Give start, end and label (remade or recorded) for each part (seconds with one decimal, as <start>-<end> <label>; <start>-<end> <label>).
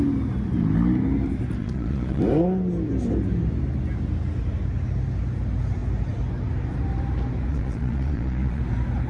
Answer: 0.0-1.6 recorded; 1.6-2.2 remade; 2.2-7.5 recorded; 7.5-8.6 remade; 8.6-9.1 recorded